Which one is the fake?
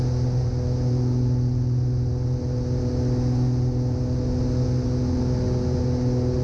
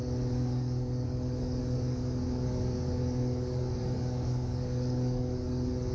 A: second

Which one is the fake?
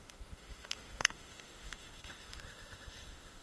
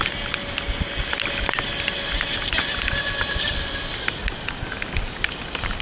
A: first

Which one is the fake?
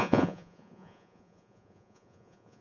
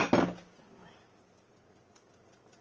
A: first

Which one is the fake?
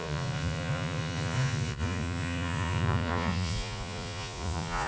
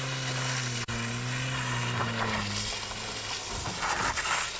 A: first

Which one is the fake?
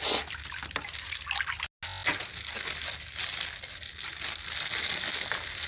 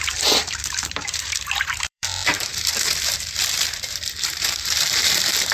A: second